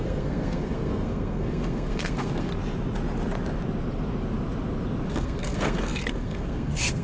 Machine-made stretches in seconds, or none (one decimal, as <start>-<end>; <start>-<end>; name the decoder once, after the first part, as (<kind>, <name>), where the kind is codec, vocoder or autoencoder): 0.0-2.5 (codec, SNAC); 5.1-7.0